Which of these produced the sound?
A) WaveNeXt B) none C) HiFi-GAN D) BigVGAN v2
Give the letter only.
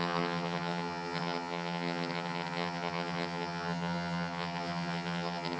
C